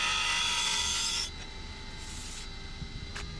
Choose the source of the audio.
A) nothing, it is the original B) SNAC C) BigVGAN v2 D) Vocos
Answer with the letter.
A